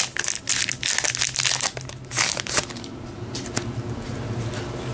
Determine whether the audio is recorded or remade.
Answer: recorded